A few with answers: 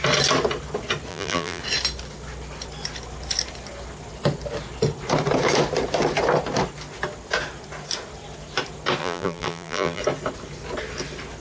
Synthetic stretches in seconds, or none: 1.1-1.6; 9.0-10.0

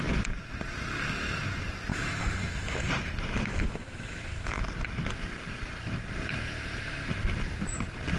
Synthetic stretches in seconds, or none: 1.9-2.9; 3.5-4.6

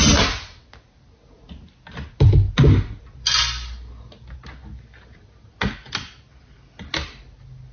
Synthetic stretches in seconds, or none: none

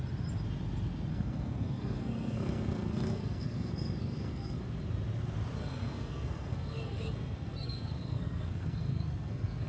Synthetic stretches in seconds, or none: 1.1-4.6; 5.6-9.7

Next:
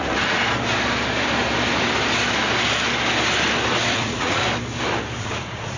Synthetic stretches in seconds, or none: 0.0-0.4; 3.9-4.4; 5.2-5.8